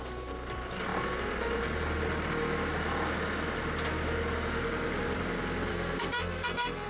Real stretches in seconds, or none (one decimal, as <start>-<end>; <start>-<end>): 0.0-5.7